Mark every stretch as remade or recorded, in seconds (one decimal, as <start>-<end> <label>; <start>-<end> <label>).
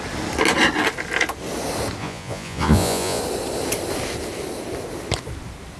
0.0-2.0 recorded; 2.0-3.2 remade; 3.2-5.8 recorded